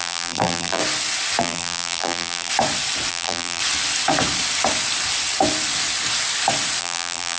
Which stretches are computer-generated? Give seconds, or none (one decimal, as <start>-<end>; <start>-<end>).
0.0-0.8; 1.4-2.5; 3.1-3.6; 6.8-7.4